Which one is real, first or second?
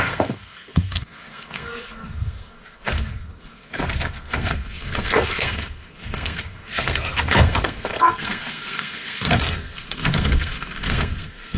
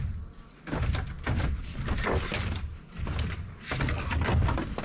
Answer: second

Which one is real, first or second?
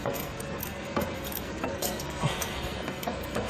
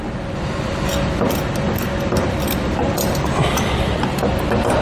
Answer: second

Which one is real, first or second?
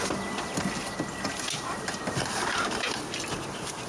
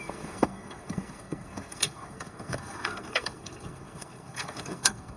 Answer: first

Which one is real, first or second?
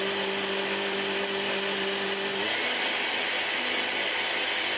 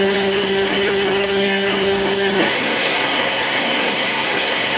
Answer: first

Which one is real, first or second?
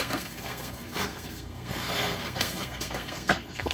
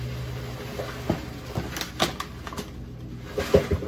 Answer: second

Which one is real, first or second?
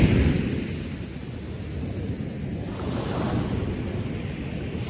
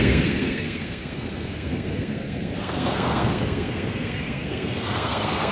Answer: first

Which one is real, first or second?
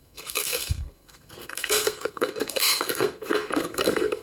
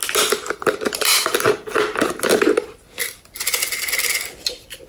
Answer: second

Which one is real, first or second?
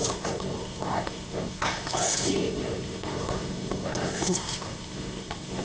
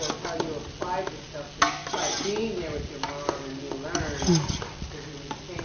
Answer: second